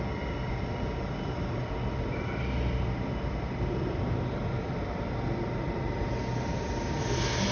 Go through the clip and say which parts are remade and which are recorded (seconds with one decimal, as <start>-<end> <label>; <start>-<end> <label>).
0.0-0.5 recorded; 0.5-1.7 remade; 1.7-7.5 recorded